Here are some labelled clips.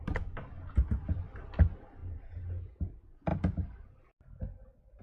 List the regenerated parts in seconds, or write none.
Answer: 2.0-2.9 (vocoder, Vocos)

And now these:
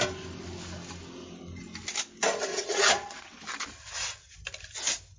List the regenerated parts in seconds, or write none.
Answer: 2.5-3.4 (vocoder, WaveNeXt)

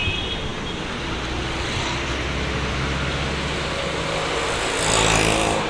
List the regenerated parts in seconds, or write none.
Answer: none

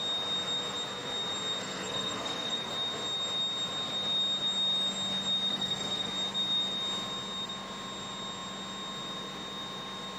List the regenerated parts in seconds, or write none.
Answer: 1.6-2.7 (codec, SNAC); 5.5-6.1

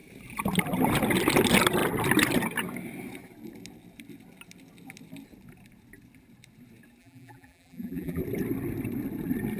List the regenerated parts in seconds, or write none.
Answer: 7.0-8.2 (vocoder, BigVGAN v2)

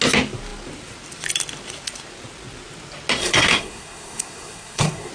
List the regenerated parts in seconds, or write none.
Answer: 3.2-5.1 (codec, SNAC)

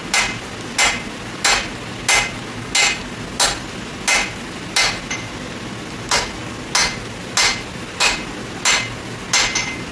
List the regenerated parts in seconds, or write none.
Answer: none